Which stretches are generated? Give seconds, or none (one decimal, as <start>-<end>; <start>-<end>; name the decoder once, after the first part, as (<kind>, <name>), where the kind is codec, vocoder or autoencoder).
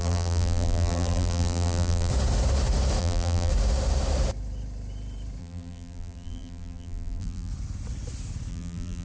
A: 0.0-2.1 (vocoder, BigVGAN v2); 3.0-3.5; 5.4-7.5; 8.5-9.0